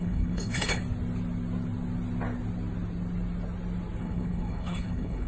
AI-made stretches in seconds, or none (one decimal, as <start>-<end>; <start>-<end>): 0.0-0.8; 4.0-5.3